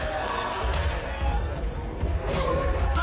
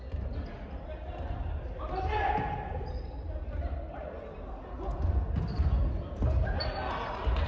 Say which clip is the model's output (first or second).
first